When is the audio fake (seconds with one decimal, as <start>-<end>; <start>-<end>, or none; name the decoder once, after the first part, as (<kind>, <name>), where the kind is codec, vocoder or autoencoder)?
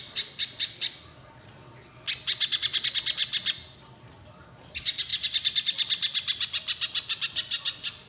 5.1-7.2 (vocoder, BigVGAN v2)